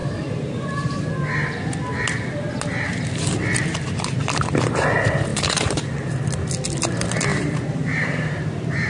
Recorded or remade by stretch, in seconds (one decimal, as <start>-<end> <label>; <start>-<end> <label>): 0.0-1.0 remade; 1.0-5.3 recorded; 5.3-6.1 remade; 6.1-7.3 recorded; 7.3-8.9 remade